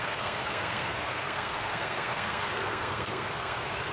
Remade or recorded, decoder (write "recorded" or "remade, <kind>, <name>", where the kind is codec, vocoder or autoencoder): remade, codec, SNAC